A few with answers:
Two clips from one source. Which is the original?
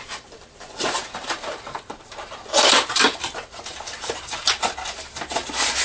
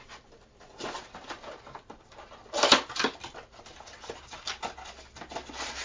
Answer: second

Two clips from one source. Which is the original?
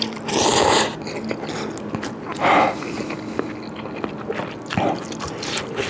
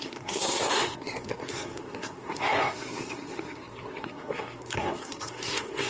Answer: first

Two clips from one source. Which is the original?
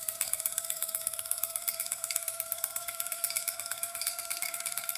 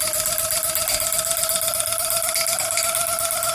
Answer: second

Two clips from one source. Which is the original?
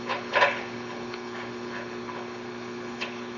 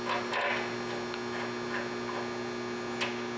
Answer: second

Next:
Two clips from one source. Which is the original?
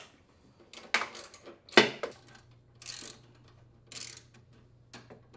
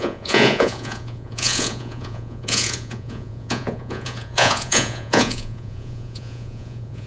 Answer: first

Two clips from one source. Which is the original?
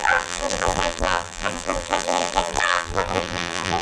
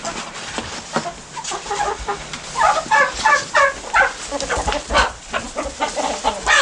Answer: second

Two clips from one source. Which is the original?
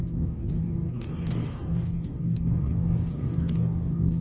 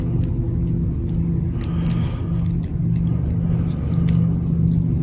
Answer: second